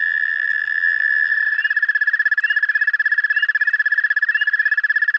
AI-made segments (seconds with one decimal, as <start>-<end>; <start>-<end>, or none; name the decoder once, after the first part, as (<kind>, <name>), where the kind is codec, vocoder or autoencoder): 0.0-1.3 (vocoder, BigVGAN v2)